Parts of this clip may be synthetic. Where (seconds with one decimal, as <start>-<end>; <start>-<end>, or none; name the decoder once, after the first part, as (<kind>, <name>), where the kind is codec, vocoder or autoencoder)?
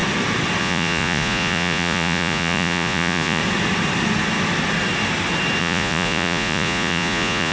0.6-3.4 (vocoder, Vocos); 5.6-7.5